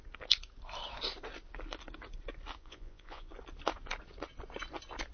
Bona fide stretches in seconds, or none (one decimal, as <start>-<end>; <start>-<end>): 0.0-2.6; 3.3-5.1